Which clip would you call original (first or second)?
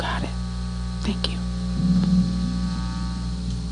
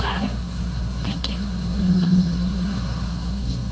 first